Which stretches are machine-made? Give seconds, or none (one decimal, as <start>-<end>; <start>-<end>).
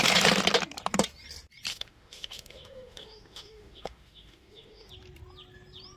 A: 1.7-4.9